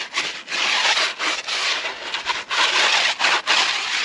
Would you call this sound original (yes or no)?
yes